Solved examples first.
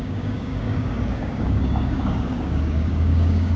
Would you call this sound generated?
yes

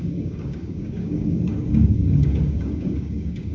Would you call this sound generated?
yes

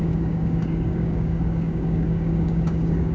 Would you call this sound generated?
yes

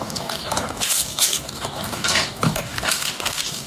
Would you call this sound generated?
yes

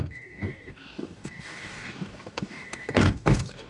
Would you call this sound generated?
yes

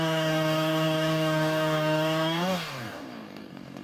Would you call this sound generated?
yes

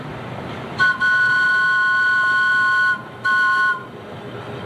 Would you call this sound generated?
no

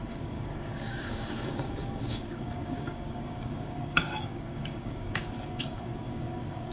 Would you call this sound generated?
yes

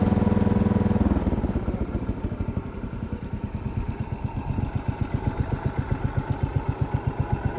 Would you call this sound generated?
no